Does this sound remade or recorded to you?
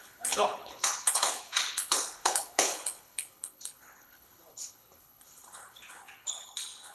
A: remade